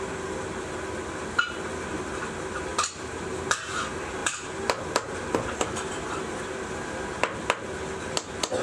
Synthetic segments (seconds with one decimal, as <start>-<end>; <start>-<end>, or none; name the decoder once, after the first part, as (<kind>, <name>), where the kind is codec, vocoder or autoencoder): 2.7-3.4 (vocoder, BigVGAN v2); 4.2-6.3